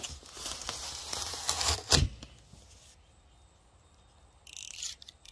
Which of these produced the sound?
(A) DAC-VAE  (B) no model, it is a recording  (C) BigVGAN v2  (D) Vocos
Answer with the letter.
B